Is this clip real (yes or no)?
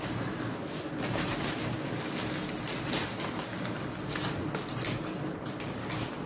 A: yes